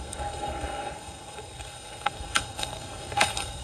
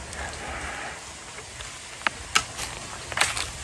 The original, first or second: second